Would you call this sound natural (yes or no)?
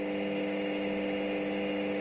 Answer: yes